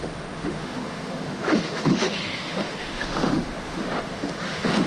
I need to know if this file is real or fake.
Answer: fake